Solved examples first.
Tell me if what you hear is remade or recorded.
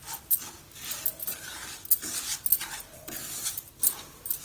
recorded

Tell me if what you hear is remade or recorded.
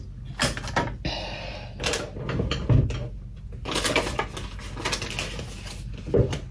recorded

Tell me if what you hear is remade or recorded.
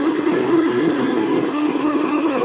remade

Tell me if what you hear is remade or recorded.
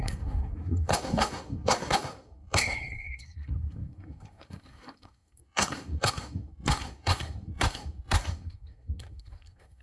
remade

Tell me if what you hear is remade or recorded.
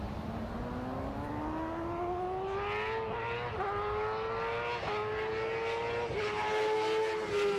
recorded